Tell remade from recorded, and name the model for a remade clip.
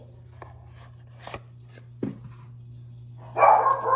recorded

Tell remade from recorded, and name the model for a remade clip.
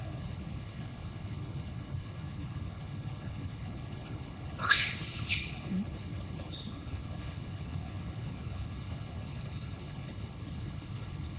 remade, codec, HILCodec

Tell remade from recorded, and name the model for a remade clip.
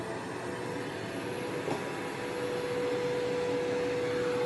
recorded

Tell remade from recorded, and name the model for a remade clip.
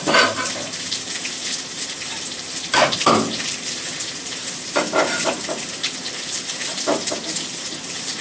remade, vocoder, BigVGAN v2